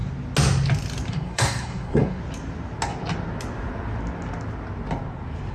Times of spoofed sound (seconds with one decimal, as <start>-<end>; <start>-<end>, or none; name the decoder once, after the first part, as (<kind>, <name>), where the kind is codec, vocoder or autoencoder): 1.1-2.2 (codec, SNAC)